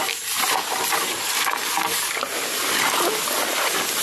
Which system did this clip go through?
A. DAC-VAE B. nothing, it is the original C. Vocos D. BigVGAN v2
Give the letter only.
B